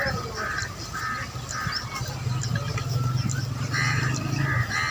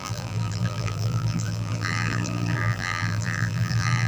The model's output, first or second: second